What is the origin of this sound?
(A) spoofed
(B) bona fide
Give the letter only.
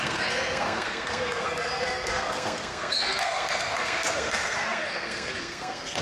A